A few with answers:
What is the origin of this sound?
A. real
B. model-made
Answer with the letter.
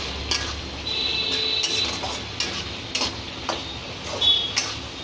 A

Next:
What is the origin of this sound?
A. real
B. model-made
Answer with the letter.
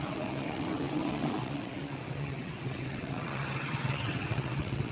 B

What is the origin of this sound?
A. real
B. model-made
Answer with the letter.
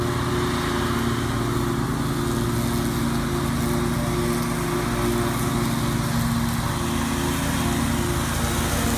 A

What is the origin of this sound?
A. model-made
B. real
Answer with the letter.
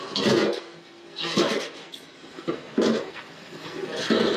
A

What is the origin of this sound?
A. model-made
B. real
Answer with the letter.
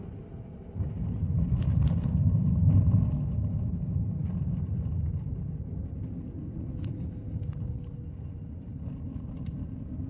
B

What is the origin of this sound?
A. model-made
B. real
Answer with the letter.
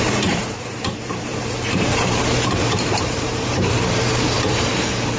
A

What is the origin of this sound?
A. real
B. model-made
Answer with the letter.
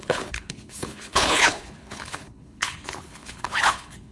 B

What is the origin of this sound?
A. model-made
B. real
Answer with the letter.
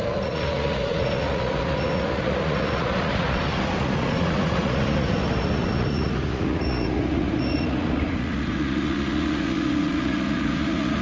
A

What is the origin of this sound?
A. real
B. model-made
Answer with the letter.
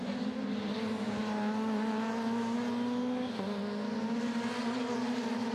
A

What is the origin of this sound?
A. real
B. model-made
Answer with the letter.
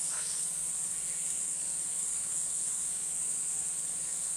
B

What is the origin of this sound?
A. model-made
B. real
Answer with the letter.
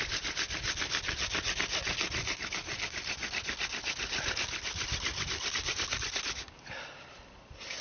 B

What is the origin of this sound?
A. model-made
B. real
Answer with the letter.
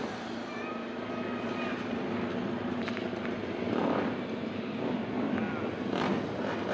B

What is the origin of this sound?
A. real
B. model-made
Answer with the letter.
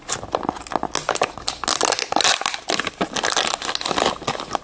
A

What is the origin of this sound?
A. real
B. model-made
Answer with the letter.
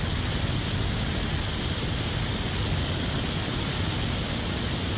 A